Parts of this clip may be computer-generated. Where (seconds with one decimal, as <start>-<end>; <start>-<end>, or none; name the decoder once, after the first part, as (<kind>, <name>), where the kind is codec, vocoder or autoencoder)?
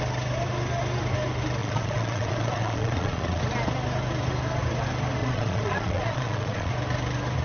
1.6-3.4 (vocoder, Vocos); 5.2-6.7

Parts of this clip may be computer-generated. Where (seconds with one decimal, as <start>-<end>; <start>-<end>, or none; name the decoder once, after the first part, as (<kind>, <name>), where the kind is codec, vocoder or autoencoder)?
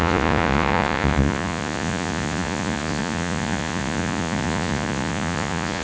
0.0-5.8 (vocoder, Vocos)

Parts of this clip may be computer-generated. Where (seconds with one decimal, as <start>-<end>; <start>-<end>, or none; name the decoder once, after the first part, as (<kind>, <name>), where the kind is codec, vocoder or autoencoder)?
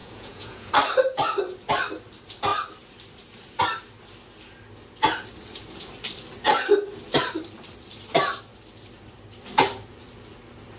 0.0-0.7 (vocoder, Vocos)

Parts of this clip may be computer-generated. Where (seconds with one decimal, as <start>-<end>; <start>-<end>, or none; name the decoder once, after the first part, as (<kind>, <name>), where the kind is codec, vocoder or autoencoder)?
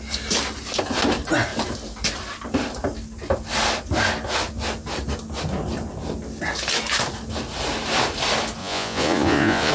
8.6-9.7 (vocoder, Vocos)